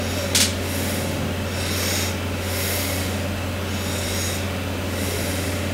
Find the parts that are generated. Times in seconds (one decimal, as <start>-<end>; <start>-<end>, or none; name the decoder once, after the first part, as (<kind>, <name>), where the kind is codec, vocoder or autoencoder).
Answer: none